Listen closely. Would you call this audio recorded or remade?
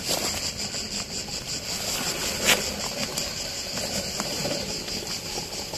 recorded